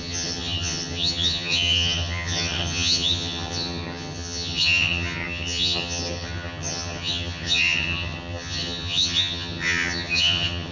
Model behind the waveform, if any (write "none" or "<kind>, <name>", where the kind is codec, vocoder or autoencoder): vocoder, HiFi-GAN